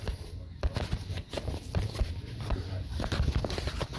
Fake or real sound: real